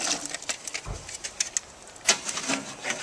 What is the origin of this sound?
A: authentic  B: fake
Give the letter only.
A